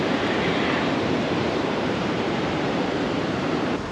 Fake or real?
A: fake